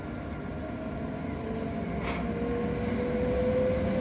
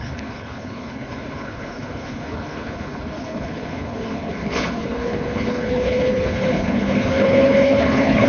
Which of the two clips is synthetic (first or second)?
second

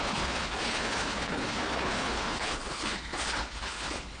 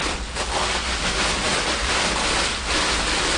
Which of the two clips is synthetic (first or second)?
first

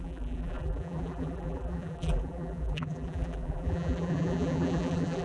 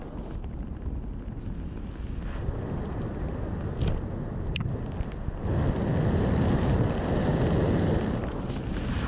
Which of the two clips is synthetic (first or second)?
first